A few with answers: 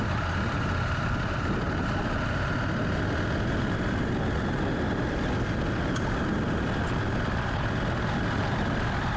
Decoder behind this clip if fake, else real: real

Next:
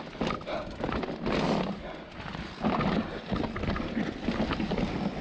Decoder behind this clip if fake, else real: real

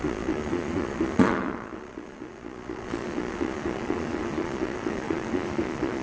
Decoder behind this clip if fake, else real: fake, vocoder, Vocos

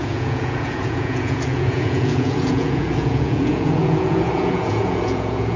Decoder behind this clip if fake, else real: fake, vocoder, Vocos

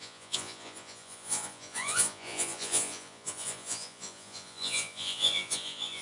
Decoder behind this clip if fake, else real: fake, vocoder, Vocos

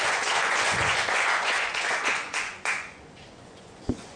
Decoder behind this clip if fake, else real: fake, vocoder, Vocos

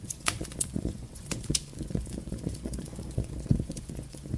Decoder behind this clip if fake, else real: fake, vocoder, Vocos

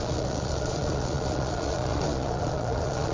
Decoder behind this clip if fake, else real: fake, vocoder, Vocos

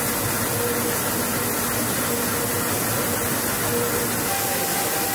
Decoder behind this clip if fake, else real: real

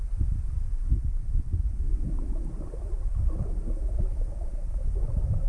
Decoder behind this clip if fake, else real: real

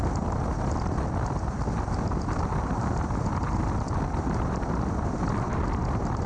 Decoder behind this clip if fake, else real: real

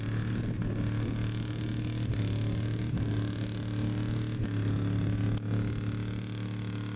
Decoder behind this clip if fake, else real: real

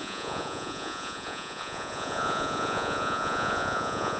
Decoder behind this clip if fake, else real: fake, vocoder, Vocos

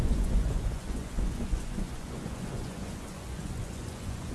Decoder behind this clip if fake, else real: fake, vocoder, Vocos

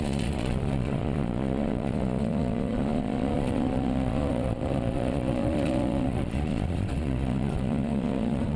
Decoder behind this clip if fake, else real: fake, vocoder, Vocos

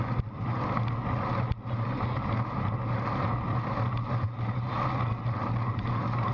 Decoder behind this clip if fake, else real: real